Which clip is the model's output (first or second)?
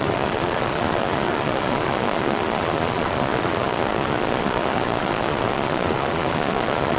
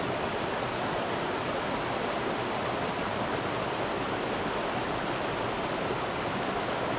first